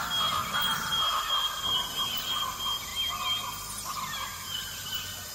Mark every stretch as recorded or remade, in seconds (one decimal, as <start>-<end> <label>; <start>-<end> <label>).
0.0-0.4 recorded; 0.4-2.1 remade; 2.1-5.3 recorded